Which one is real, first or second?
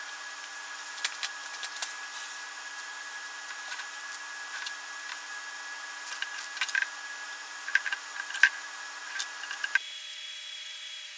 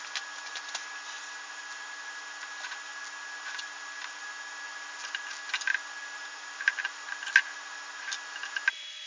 second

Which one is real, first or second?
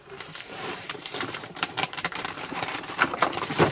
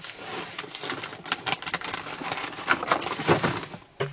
second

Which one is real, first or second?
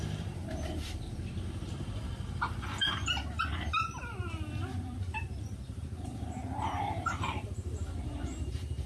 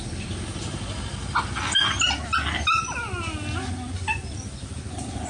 second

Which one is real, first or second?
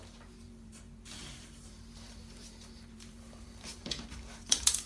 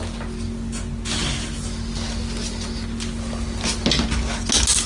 second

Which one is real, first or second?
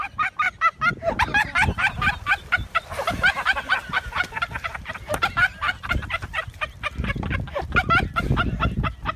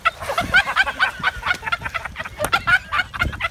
second